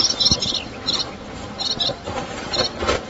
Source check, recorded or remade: recorded